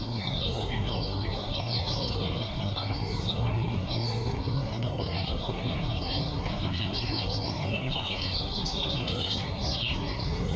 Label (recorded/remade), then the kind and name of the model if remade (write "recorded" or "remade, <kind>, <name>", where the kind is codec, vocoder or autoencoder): remade, codec, SNAC